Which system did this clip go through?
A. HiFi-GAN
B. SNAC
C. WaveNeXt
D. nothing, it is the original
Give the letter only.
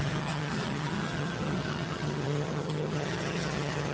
A